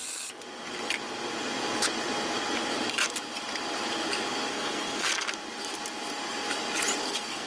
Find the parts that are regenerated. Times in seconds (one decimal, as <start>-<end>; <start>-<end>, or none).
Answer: 4.5-5.1; 7.0-7.5